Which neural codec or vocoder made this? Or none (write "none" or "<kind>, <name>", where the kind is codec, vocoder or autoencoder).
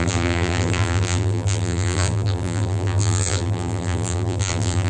vocoder, BigVGAN v2